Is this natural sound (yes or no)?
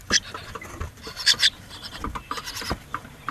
no